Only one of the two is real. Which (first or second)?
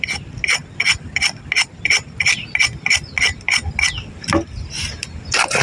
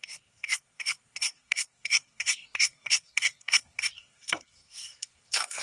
first